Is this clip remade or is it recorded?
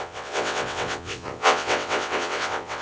remade